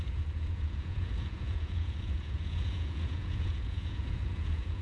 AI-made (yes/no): yes